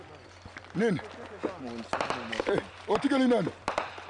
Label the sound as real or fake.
real